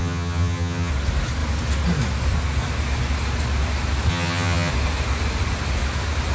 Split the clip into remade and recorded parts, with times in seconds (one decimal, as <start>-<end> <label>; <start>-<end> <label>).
0.0-0.9 remade; 0.9-4.1 recorded; 4.1-4.7 remade; 4.7-6.3 recorded